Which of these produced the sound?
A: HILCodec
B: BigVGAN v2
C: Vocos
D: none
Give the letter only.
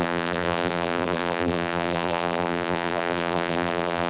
B